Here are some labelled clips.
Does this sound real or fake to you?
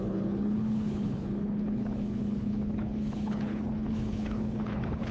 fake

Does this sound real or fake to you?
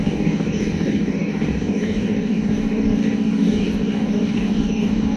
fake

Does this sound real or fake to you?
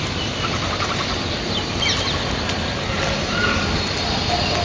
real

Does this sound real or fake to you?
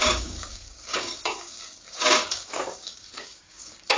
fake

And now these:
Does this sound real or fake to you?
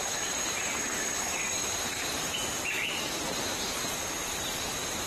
fake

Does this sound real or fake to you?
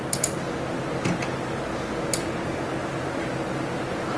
real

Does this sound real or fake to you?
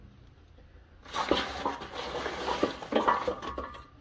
real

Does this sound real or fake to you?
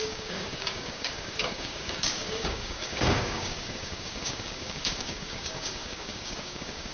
fake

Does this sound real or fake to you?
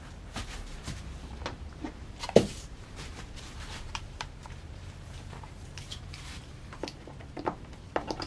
fake